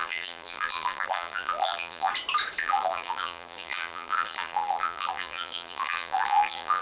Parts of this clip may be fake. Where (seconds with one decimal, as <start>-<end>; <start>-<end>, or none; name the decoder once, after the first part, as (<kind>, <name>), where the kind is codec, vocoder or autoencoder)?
0.0-2.1 (vocoder, BigVGAN v2); 2.6-6.8